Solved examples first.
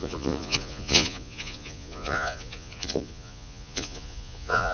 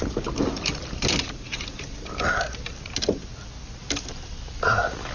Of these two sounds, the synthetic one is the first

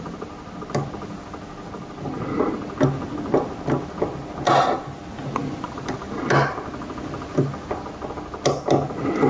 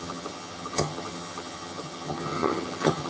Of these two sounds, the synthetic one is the second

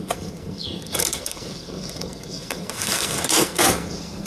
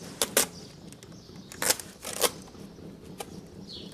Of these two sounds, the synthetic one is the first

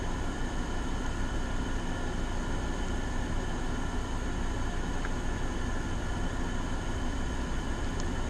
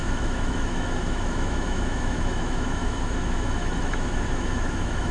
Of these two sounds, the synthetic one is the second